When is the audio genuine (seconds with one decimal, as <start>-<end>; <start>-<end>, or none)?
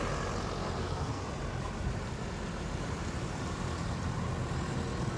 0.0-0.6; 1.2-5.2